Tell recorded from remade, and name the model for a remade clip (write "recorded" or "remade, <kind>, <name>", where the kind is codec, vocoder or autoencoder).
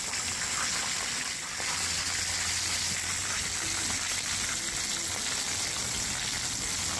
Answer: recorded